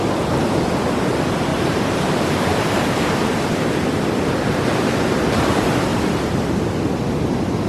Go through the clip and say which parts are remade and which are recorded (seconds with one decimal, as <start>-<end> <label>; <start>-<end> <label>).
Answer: 0.0-1.5 recorded; 1.5-2.6 remade; 2.6-5.9 recorded; 5.9-6.5 remade; 6.5-7.7 recorded